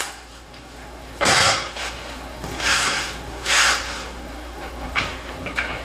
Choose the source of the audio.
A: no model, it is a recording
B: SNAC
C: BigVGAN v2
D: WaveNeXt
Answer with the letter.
B